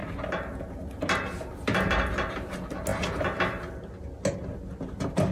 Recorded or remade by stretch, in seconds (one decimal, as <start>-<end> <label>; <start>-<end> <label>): 0.0-5.3 recorded